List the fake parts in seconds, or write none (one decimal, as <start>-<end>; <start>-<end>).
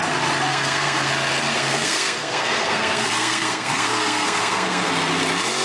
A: 0.5-1.1; 1.5-4.9